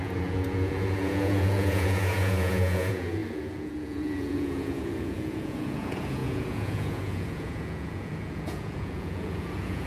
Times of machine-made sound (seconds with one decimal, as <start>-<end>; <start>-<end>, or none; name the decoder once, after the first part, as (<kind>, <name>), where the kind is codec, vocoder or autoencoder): 0.0-9.9 (vocoder, Vocos)